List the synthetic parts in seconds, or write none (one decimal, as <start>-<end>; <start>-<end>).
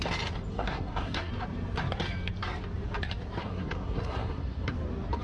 0.5-1.3; 3.4-4.7